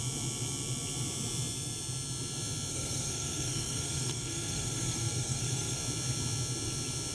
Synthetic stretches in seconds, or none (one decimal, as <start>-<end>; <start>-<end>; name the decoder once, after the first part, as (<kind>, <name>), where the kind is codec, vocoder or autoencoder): 2.7-5.8 (codec, SNAC)